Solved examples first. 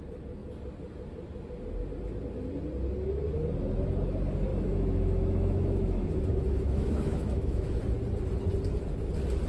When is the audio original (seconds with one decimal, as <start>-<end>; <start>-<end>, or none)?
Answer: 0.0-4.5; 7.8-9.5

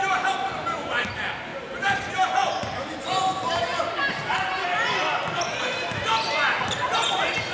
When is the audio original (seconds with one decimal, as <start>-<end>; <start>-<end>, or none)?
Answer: 0.0-7.5

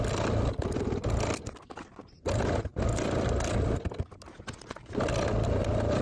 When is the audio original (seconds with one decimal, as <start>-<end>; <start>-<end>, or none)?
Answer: 0.0-6.0

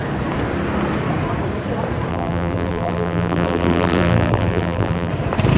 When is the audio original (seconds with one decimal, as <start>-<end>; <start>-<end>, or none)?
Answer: 0.0-2.1; 5.1-5.6

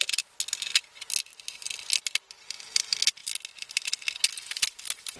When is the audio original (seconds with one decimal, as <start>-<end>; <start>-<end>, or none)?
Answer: 0.0-5.2

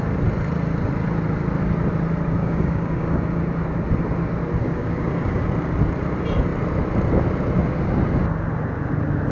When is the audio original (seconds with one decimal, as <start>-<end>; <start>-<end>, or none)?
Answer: 0.0-2.4; 3.2-4.6; 5.5-9.3

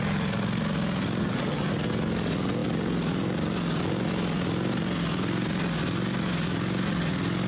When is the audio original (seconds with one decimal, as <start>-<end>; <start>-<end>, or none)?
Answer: 0.0-1.2; 1.7-7.5